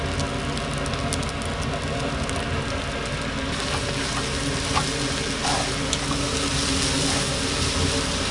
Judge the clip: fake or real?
real